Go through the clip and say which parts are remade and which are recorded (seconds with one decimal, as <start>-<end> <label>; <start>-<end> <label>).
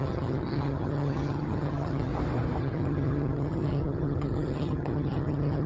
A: 0.0-2.1 remade; 2.1-2.6 recorded; 2.6-5.7 remade